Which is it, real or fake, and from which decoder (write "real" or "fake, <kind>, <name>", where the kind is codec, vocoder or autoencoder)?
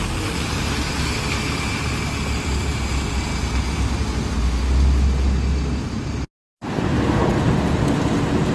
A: real